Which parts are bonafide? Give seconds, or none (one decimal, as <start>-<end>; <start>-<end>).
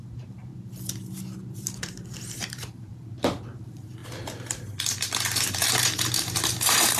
0.5-1.4; 2.9-3.5; 4.0-5.5